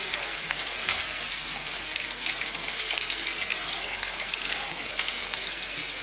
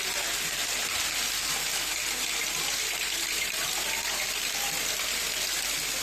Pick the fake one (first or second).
first